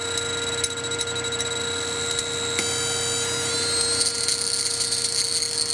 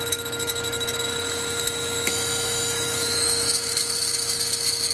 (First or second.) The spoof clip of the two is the second